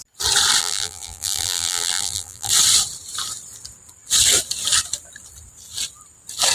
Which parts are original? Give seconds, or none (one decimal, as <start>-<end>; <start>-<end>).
0.0-0.6; 2.5-6.5